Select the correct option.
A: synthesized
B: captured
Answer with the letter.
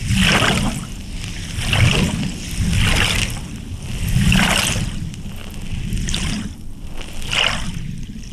B